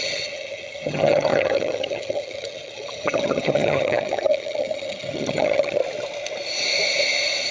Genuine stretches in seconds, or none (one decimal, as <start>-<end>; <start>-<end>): 5.8-7.5